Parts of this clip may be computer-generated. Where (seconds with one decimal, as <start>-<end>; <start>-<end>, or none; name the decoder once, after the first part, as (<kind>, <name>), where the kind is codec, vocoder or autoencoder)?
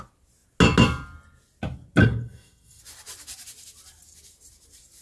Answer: 2.0-2.8 (codec, SNAC)